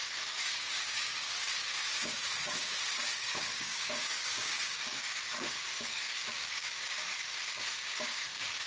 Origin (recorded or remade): remade